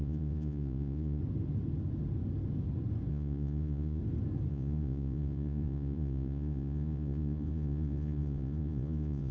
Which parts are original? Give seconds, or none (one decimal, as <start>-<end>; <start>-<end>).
1.2-3.1; 4.0-4.5